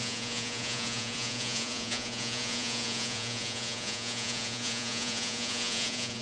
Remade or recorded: remade